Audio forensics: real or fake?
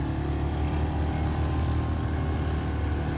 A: real